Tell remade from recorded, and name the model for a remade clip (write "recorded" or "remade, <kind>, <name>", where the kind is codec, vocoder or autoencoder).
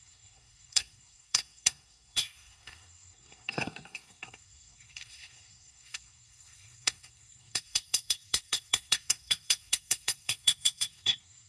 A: remade, codec, SNAC